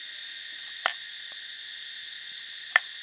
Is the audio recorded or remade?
recorded